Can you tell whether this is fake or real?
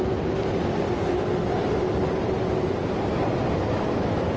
real